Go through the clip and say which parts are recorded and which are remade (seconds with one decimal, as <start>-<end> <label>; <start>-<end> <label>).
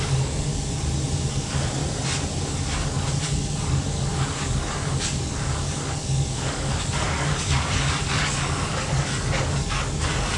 0.0-0.5 remade; 0.5-1.3 recorded; 1.3-1.8 remade; 1.8-2.9 recorded; 2.9-10.4 remade